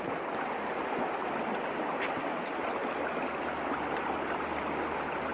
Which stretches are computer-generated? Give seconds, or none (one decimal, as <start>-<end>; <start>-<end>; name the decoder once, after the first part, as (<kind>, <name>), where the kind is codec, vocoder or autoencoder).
none